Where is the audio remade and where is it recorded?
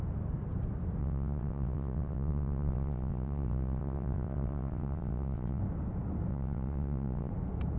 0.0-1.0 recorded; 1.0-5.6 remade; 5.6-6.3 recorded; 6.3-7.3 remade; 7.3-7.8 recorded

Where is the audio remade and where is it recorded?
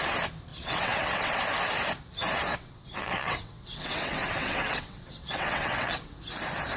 0.0-0.5 recorded; 0.5-1.4 remade; 1.4-2.5 recorded; 2.5-6.1 remade; 6.1-6.8 recorded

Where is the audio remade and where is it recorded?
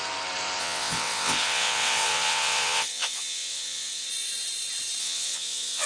0.0-0.6 recorded; 0.6-4.1 remade; 4.1-5.0 recorded; 5.0-5.9 remade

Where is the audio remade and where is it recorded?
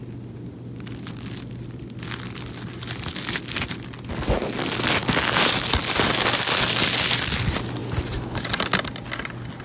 0.0-9.6 recorded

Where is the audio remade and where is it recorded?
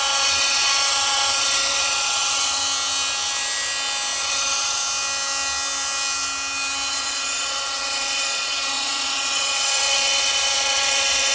0.0-2.6 remade; 2.6-4.2 recorded; 4.2-4.8 remade; 4.8-6.9 recorded; 6.9-11.3 remade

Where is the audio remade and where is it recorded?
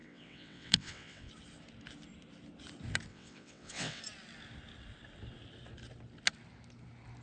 0.0-1.3 remade; 1.3-3.1 recorded; 3.1-4.0 remade; 4.0-7.2 recorded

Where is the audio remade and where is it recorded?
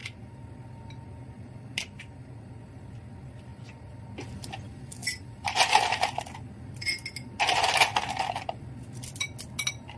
0.0-10.0 recorded